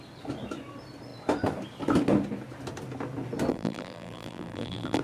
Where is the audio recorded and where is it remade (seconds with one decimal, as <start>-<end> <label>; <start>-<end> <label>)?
0.0-3.5 recorded; 3.5-5.0 remade